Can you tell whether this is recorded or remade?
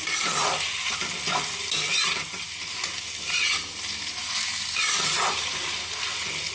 recorded